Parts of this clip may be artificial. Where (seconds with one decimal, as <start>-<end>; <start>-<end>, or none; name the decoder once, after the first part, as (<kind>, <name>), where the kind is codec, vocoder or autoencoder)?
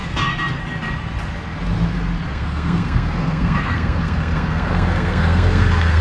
0.0-0.6 (codec, SNAC); 2.3-6.0